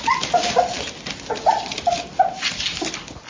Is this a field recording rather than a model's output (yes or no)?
yes